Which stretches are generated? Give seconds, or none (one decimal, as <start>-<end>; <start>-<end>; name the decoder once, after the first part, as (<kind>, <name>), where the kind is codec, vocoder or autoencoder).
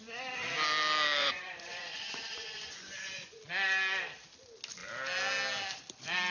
1.2-3.4 (vocoder, Vocos)